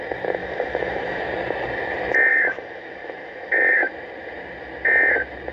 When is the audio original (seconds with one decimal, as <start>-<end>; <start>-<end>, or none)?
0.0-0.4; 1.2-2.3; 3.9-5.5